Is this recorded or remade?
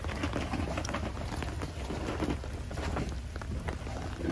recorded